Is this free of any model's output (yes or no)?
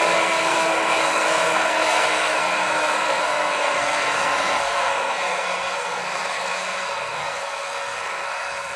no